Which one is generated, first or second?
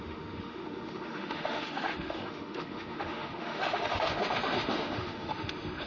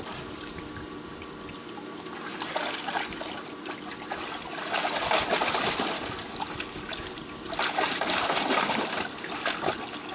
first